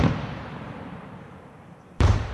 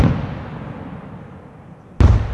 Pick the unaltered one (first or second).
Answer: second